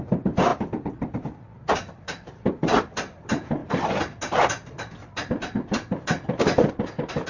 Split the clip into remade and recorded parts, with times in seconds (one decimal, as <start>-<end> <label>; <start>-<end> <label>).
0.0-7.3 recorded